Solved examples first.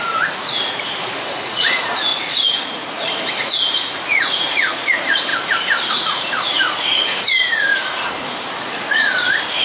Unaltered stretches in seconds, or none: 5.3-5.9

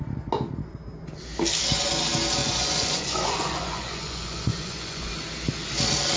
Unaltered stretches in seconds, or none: 0.0-2.4; 5.1-6.2

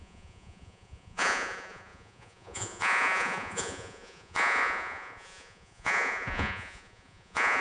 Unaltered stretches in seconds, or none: none

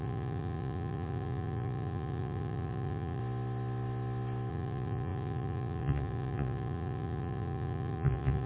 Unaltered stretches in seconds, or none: 3.2-4.5

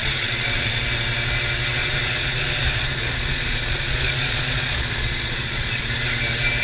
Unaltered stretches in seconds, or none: 0.8-1.8; 5.8-6.6